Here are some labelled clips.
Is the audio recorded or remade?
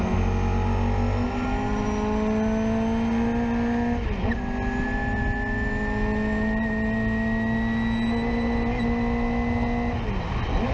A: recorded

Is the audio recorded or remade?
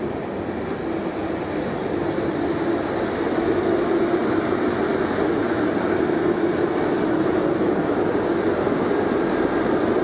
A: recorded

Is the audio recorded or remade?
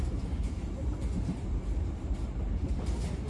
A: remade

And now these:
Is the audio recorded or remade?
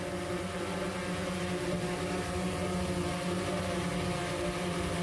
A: recorded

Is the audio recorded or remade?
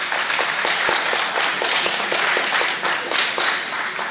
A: remade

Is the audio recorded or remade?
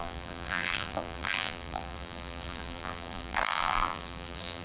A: remade